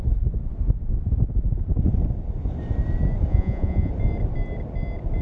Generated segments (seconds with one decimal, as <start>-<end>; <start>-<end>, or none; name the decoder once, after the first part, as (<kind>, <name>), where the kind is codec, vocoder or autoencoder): 3.3-3.9 (vocoder, Vocos)